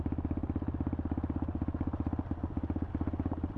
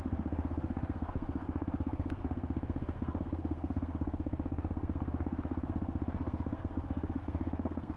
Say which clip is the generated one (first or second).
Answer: second